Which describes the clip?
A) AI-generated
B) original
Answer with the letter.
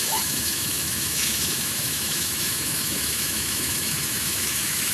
A